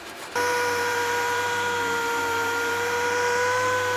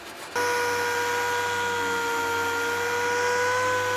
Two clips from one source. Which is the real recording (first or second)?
second